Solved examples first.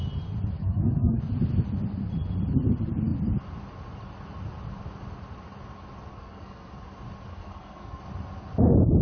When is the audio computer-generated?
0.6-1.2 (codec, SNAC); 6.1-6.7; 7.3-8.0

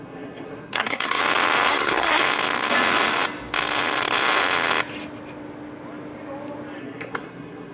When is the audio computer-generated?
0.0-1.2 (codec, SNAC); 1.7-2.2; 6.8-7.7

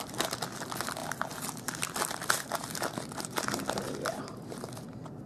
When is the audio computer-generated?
none

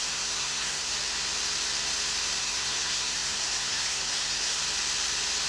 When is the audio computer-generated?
0.0-0.9 (codec, SNAC); 2.4-4.6

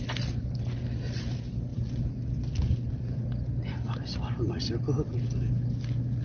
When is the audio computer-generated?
none

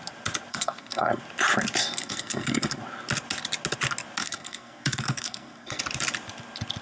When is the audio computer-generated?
0.5-1.2 (codec, SNAC); 1.8-2.8; 4.2-5.8